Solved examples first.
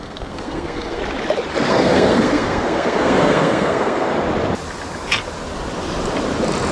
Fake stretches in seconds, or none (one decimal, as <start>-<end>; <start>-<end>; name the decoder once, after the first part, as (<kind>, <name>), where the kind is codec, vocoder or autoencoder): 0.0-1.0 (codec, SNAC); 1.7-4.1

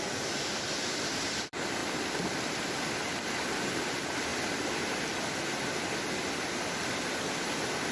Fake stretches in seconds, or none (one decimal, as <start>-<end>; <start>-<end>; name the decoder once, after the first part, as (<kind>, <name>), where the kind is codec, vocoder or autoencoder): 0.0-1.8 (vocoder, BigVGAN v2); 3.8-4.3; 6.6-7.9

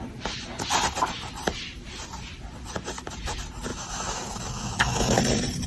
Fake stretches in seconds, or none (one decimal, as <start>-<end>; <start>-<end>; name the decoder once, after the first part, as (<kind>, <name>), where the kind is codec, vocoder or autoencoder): 3.7-5.2 (autoencoder, DAC-VAE)

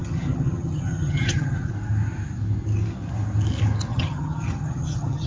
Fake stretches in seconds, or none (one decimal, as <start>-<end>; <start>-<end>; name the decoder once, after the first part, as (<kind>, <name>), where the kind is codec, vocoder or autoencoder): 0.0-1.7 (vocoder, HiFi-GAN); 3.9-5.3